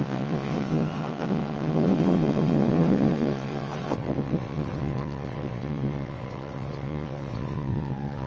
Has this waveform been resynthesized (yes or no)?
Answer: yes